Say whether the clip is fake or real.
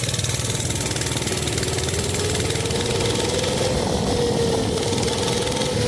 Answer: real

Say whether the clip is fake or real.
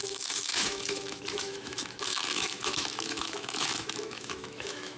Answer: fake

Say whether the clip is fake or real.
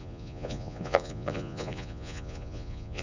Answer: fake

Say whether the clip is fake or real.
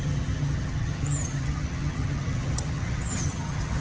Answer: fake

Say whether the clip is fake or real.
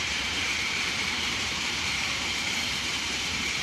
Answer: fake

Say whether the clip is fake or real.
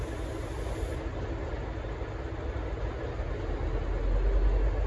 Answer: real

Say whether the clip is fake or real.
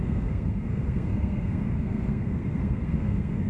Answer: fake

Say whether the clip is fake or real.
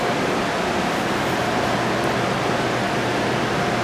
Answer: real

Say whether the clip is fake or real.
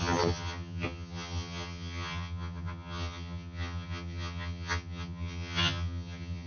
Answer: fake